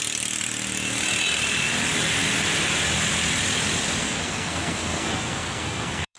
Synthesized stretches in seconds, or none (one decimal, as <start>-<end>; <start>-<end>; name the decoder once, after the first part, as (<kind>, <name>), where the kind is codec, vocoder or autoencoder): 4.0-6.2 (codec, SNAC)

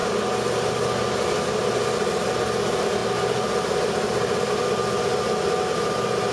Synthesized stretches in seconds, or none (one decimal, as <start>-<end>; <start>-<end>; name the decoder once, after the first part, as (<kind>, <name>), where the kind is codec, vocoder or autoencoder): none

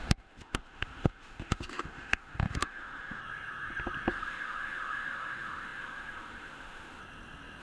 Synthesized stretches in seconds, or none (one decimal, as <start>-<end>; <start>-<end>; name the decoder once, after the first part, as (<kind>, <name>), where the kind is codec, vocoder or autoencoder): 0.0-3.2 (autoencoder, DAC-VAE); 4.1-7.0

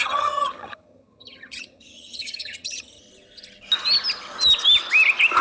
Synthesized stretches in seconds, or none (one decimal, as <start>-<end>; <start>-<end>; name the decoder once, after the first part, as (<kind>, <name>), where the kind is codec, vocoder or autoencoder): 0.0-3.0 (vocoder, HiFi-GAN)